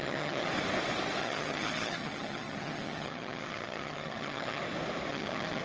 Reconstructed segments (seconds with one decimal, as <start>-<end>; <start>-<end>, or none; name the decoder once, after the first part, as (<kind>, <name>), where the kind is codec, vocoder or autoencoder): 0.0-0.5 (vocoder, HiFi-GAN); 1.2-4.6; 5.1-5.6